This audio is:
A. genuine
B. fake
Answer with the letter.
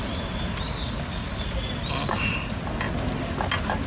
A